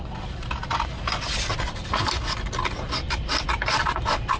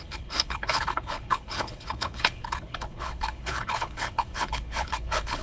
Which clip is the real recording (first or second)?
first